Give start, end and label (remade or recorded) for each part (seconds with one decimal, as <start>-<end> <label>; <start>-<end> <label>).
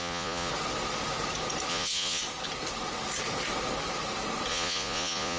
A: 0.0-0.5 remade; 0.5-1.7 recorded; 1.7-2.2 remade; 2.2-4.5 recorded; 4.5-5.4 remade